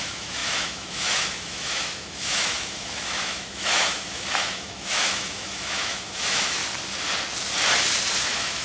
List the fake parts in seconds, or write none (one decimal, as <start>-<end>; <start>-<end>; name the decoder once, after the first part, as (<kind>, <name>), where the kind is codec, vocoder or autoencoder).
0.0-6.6 (autoencoder, DAC-VAE); 8.2-8.6